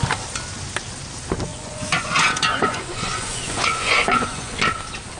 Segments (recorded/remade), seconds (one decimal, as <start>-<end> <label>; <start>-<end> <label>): 0.0-1.5 recorded; 1.5-4.6 remade; 4.6-5.2 recorded